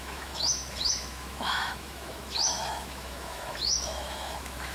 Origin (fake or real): fake